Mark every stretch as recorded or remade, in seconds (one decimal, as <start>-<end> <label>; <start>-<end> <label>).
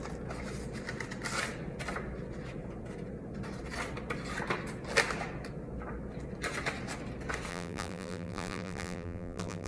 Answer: 0.0-7.5 recorded; 7.5-9.7 remade